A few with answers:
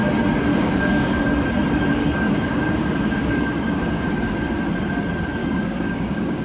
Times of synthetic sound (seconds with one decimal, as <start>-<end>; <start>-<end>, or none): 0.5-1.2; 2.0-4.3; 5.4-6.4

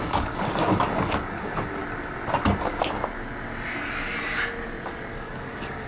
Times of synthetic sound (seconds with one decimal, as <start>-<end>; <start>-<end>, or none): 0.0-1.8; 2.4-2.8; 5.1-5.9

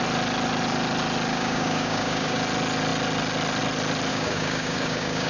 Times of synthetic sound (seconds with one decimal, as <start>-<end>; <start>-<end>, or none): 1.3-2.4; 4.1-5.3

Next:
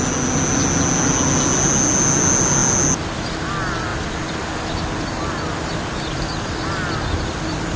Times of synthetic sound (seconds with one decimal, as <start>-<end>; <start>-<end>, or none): none